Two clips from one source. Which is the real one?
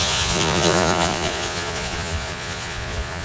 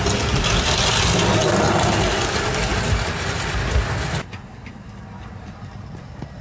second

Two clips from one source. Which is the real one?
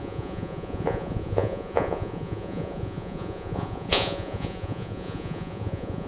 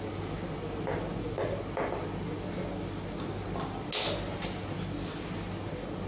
second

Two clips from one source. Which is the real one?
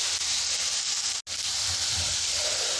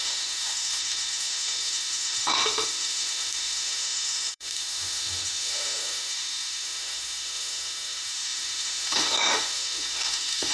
first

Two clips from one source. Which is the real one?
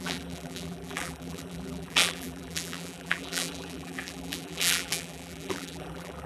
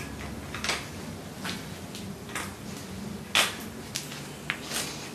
second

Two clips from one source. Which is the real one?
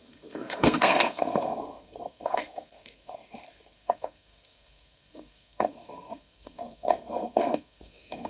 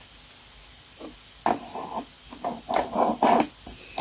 second